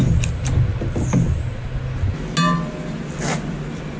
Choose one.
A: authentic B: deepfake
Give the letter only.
A